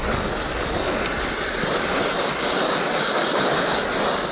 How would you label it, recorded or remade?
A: recorded